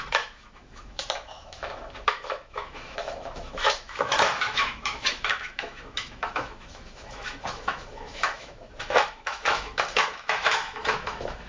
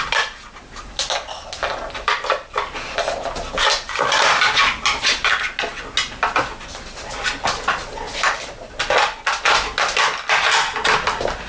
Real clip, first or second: second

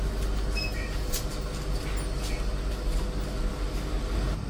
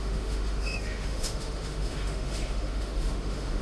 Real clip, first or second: first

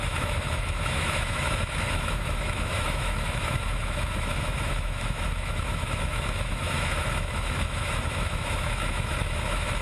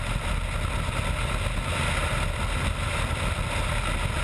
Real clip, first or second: second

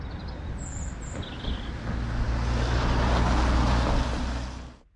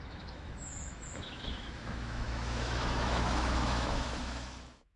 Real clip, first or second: first